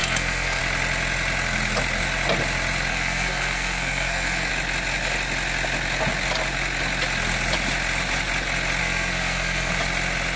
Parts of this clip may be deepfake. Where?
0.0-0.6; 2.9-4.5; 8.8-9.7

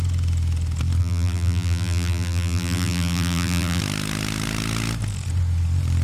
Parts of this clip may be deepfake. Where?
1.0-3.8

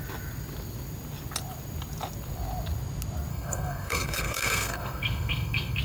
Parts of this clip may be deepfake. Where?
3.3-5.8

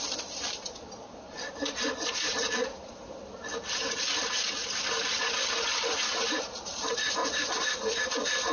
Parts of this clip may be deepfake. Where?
none